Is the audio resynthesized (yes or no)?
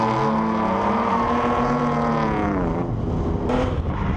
no